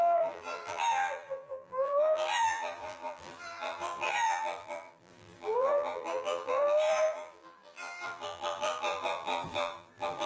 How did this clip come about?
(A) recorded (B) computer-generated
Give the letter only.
B